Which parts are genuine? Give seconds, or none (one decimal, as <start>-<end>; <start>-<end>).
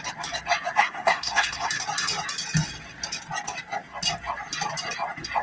0.0-0.8; 1.7-5.4